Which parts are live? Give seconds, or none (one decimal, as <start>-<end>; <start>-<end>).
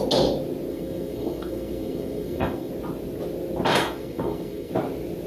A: 0.0-0.7; 2.7-3.7; 4.7-5.3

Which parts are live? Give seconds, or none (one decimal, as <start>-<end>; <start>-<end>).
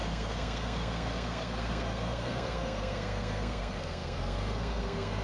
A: none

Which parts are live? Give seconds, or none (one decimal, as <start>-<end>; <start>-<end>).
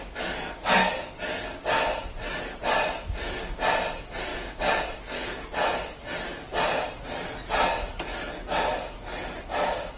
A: 0.0-10.0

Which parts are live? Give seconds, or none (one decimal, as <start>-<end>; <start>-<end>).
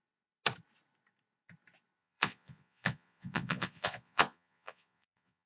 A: 0.0-2.0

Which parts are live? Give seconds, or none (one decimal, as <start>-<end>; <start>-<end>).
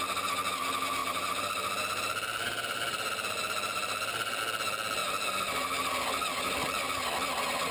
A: 0.0-1.0; 4.4-7.7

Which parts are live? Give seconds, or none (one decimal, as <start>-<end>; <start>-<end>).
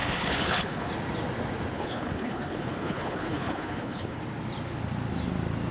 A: 0.9-1.7; 4.2-5.7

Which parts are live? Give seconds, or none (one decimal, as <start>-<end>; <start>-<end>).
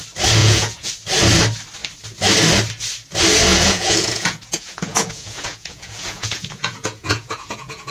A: 0.0-0.4; 0.9-3.5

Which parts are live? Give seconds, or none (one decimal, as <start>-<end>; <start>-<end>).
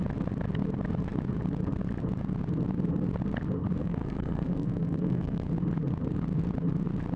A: 0.0-3.8; 5.5-7.2